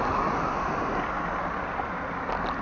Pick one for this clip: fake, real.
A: real